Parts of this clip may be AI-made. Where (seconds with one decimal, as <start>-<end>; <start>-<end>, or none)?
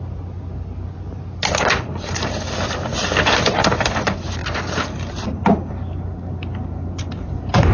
4.4-5.7